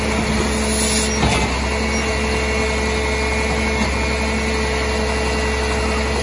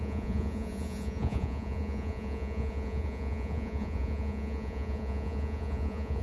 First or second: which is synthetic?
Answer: second